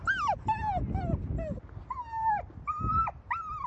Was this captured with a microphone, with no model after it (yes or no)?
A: yes